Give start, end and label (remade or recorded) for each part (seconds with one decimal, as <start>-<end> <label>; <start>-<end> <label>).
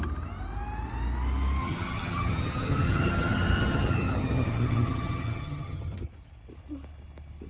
0.0-1.6 recorded; 1.6-6.1 remade; 6.1-7.5 recorded